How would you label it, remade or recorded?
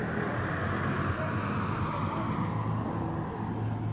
recorded